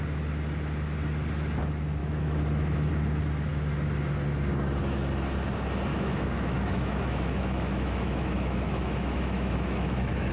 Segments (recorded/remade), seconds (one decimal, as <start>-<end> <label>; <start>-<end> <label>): 0.0-2.0 recorded; 2.0-2.9 remade; 2.9-5.9 recorded; 5.9-10.3 remade